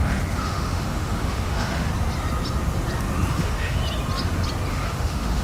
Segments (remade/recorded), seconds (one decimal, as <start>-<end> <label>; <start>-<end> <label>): 0.0-1.9 remade; 1.9-3.3 recorded; 3.3-3.8 remade; 3.8-4.7 recorded; 4.7-5.4 remade